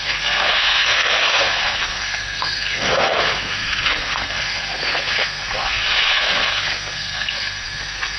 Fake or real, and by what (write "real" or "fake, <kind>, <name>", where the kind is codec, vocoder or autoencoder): fake, codec, SNAC